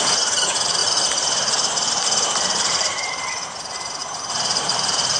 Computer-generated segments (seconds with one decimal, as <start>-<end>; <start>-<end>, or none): 0.8-3.3; 4.0-5.2